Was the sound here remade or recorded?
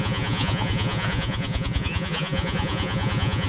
remade